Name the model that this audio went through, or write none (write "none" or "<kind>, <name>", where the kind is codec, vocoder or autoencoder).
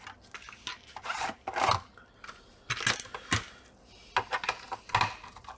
none